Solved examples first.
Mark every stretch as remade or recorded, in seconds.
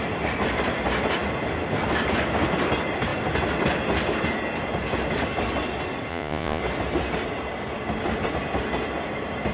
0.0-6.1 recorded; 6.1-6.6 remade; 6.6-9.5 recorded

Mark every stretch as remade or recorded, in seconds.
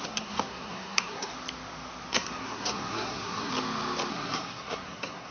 0.0-1.3 remade; 1.3-2.1 recorded; 2.1-3.5 remade; 3.5-4.1 recorded; 4.1-5.3 remade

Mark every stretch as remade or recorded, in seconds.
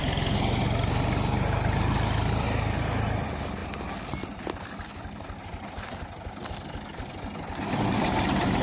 0.0-8.6 recorded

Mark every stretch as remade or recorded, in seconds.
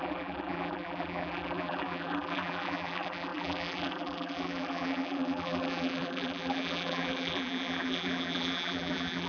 0.0-9.3 remade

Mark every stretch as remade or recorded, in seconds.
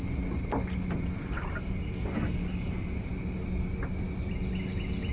0.0-5.1 recorded